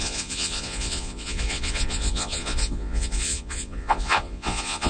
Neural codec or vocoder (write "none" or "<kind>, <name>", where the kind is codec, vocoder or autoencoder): vocoder, Vocos